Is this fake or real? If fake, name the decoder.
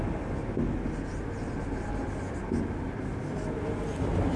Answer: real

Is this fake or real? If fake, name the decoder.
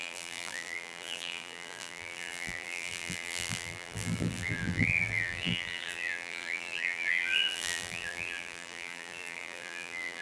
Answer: fake, vocoder, BigVGAN v2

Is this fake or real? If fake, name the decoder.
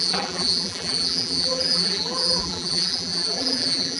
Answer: fake, vocoder, BigVGAN v2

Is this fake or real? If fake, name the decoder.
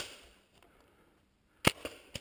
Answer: real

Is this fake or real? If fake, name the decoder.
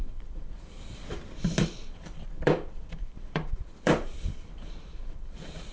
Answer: fake, vocoder, BigVGAN v2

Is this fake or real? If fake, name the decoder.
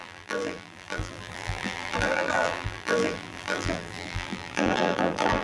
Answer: fake, vocoder, BigVGAN v2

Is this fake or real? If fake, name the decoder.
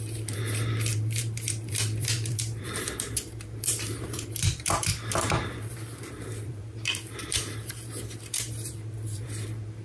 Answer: fake, vocoder, BigVGAN v2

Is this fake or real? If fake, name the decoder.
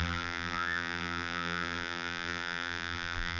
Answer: fake, vocoder, BigVGAN v2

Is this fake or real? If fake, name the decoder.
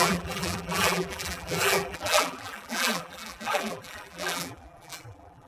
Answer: fake, vocoder, BigVGAN v2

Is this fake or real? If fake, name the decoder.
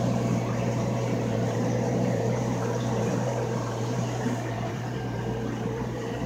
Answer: fake, vocoder, BigVGAN v2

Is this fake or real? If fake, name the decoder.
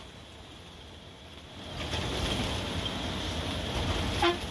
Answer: real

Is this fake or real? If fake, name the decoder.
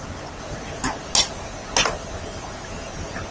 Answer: real